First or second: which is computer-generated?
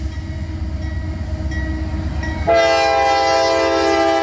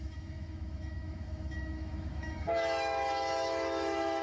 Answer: second